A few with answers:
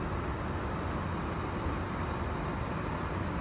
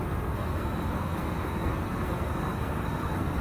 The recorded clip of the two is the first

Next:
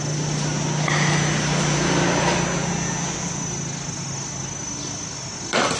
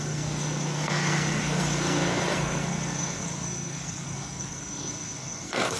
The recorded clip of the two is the first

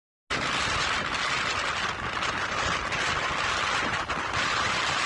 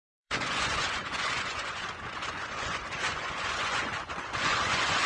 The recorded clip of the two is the first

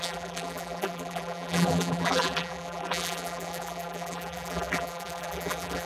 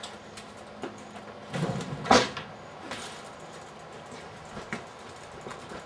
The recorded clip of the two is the second